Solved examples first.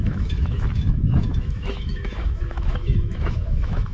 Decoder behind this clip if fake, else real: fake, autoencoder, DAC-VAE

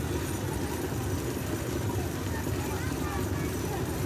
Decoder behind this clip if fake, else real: real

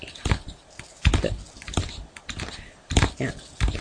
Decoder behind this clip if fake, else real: real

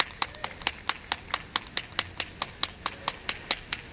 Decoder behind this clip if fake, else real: real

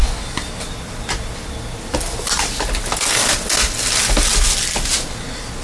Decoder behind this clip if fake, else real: real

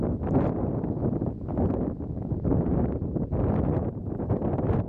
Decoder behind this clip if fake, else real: real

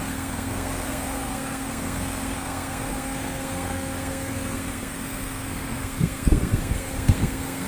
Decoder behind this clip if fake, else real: fake, codec, SNAC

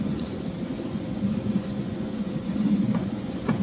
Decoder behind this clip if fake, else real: fake, vocoder, Vocos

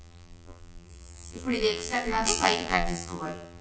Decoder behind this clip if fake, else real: fake, vocoder, BigVGAN v2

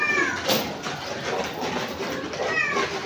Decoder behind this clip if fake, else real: real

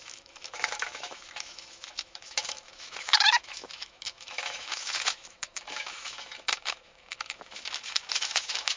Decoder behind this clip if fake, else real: fake, autoencoder, DAC-VAE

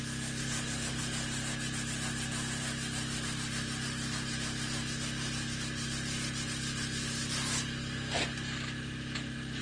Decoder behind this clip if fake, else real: real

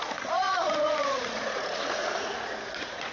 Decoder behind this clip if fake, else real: fake, vocoder, Vocos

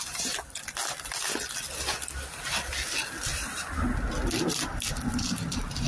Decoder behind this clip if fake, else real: real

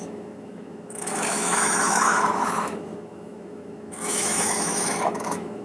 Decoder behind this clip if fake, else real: fake, autoencoder, DAC-VAE